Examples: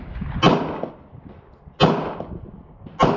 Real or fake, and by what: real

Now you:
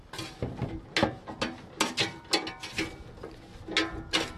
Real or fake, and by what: real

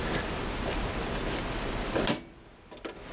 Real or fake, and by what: fake, vocoder, BigVGAN v2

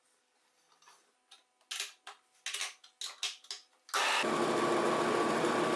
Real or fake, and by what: real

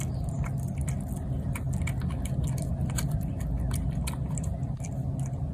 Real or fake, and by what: real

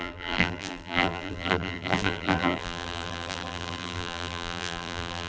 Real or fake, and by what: fake, vocoder, BigVGAN v2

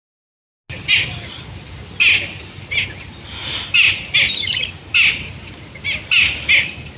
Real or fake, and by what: real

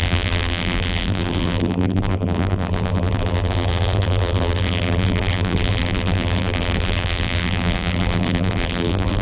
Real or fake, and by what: fake, vocoder, BigVGAN v2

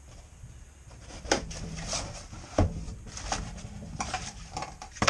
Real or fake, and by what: fake, vocoder, BigVGAN v2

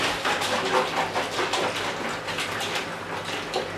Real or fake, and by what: real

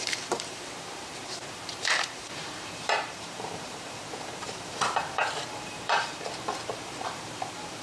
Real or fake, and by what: fake, vocoder, BigVGAN v2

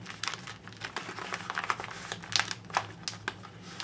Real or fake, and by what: real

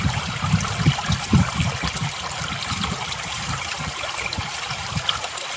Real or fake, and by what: real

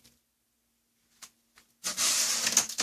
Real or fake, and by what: real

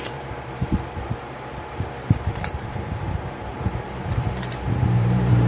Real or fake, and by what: fake, vocoder, BigVGAN v2